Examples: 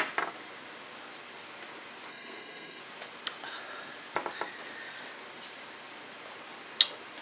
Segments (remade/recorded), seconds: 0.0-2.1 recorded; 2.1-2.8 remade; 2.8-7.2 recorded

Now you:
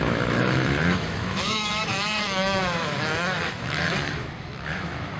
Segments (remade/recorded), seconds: 0.0-5.2 remade

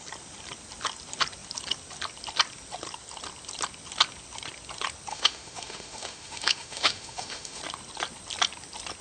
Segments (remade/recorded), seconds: 0.0-5.1 recorded; 5.1-7.6 remade; 7.6-9.0 recorded

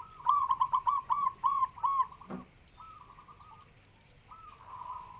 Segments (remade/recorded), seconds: 0.0-1.6 remade; 1.6-4.7 recorded; 4.7-5.2 remade